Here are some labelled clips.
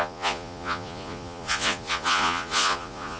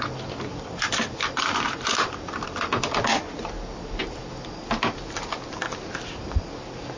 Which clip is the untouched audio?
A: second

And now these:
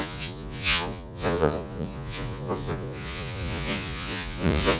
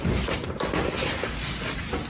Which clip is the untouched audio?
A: second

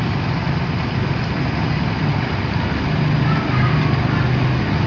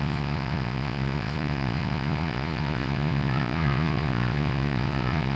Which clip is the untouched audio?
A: first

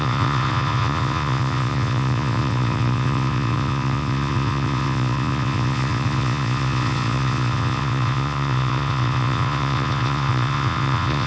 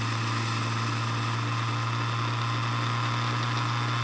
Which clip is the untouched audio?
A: second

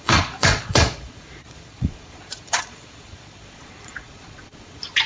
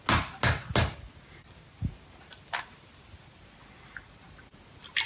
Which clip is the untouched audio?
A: second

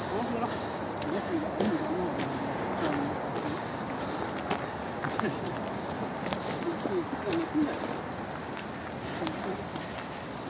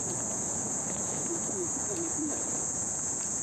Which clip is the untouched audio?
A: first